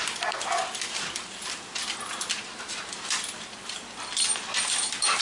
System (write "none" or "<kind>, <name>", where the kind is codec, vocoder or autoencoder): none